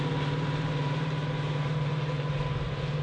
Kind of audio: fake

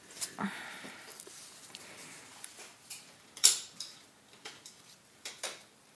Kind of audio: fake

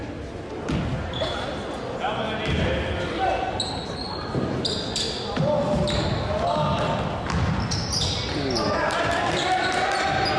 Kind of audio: real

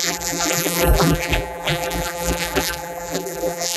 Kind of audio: fake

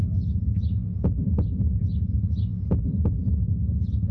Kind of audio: real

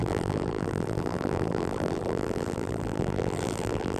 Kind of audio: fake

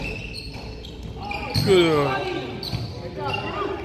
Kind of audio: real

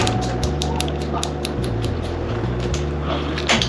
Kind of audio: real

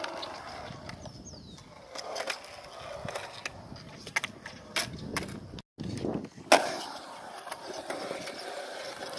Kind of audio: real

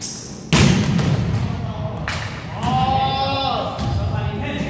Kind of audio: real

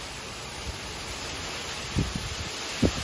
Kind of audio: fake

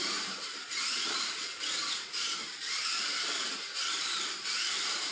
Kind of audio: fake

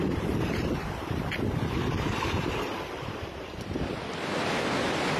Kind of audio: fake